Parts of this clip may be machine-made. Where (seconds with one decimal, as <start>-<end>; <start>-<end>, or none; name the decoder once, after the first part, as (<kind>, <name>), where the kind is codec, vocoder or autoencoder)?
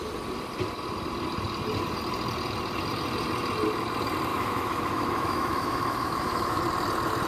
4.3-6.6 (autoencoder, DAC-VAE)